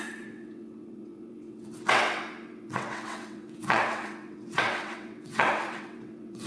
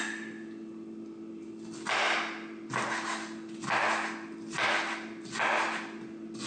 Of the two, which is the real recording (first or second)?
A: second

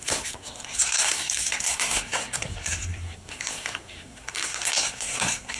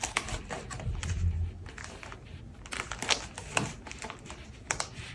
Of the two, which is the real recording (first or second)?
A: second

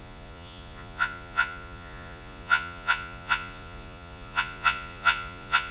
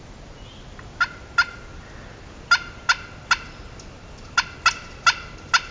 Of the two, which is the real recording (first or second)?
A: second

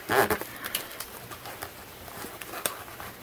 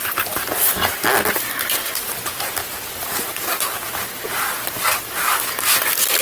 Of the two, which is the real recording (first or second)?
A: second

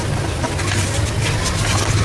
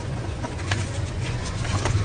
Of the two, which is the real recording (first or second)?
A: first